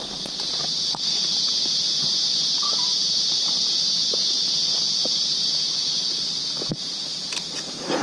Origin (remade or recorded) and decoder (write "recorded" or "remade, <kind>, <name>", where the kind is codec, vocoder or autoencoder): remade, vocoder, Vocos